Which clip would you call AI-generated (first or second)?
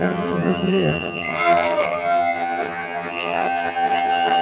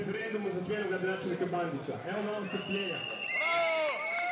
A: first